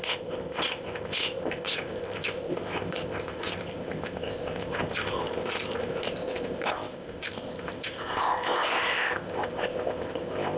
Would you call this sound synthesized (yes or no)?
yes